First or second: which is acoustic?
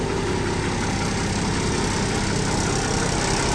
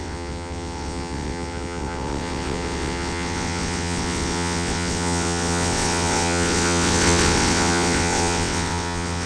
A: first